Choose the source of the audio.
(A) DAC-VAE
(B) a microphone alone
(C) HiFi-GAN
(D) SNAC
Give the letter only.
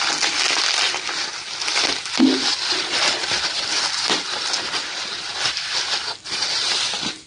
B